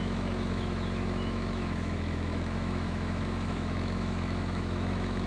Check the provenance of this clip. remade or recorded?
remade